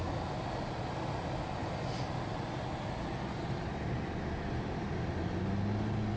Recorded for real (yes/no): yes